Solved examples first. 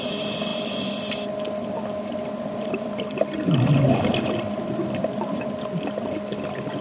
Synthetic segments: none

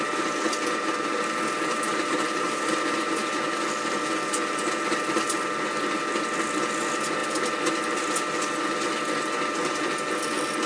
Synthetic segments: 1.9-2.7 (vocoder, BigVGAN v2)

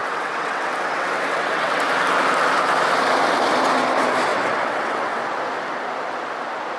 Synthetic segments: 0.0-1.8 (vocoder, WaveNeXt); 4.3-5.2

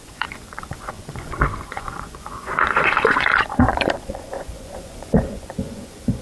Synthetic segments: 0.0-6.2 (vocoder, Vocos)

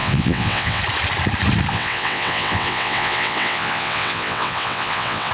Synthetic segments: 0.0-0.8 (vocoder, WaveNeXt); 1.7-5.3

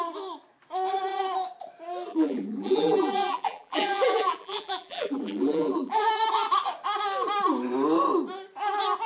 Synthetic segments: 2.1-6.1 (vocoder, BigVGAN v2)

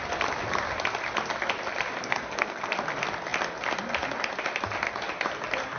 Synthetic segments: 2.0-2.7 (codec, SNAC)